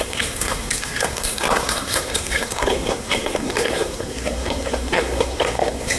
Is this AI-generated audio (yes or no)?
yes